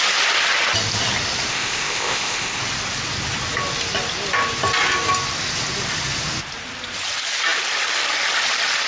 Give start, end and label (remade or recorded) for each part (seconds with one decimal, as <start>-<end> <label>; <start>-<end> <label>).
0.0-1.5 recorded; 1.5-2.6 remade; 2.6-8.9 recorded